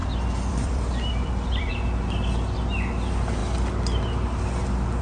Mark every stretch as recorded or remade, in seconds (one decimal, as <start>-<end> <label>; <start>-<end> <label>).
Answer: 0.0-1.7 remade; 1.7-5.0 recorded